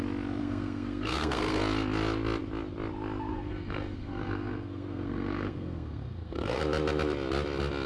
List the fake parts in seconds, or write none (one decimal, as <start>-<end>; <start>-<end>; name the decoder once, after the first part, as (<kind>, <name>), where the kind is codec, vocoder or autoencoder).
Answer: 0.4-1.6 (codec, SNAC); 3.3-6.6